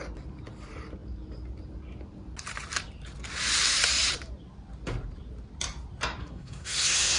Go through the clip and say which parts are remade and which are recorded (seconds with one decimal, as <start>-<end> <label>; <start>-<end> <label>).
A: 0.0-6.2 recorded; 6.2-7.2 remade